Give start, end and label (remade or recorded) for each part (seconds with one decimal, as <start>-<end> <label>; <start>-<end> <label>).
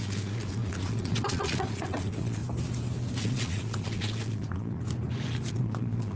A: 0.0-2.4 remade; 2.4-3.2 recorded; 3.2-4.8 remade; 4.8-5.5 recorded; 5.5-6.2 remade